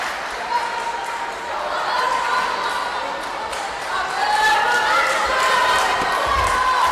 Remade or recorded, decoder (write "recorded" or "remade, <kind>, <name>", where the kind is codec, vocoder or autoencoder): recorded